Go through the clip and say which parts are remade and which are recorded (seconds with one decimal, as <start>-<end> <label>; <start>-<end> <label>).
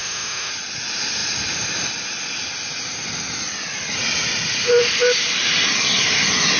0.0-0.5 remade; 0.5-6.6 recorded